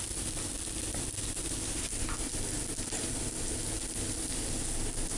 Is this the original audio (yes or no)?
yes